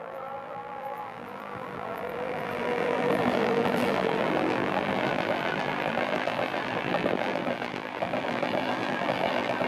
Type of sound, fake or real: fake